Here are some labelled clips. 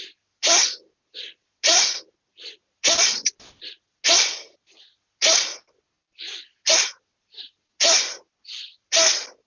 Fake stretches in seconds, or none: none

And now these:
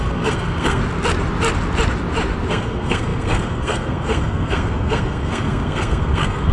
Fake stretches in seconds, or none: 0.0-0.8; 2.5-6.5

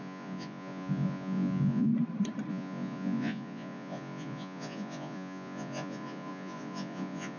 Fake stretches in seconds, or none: 0.0-1.9; 2.5-7.4

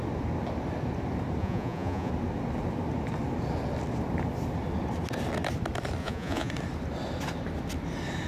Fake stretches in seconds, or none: 1.4-2.1; 6.0-6.5

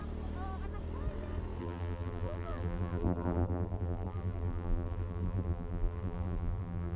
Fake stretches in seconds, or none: 1.6-7.0

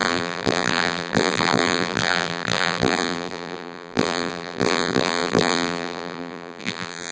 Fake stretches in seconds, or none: 0.0-7.1

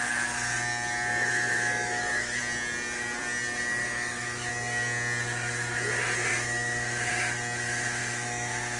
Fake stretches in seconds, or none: 1.1-2.4; 3.8-4.5; 6.3-7.1; 8.0-8.8

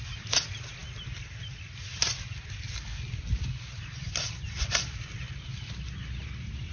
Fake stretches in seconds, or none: none